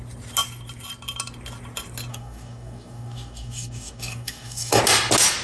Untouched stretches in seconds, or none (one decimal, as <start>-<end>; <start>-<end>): 0.0-2.1; 4.8-5.4